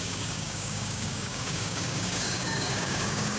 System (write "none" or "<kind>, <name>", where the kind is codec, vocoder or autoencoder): codec, DAC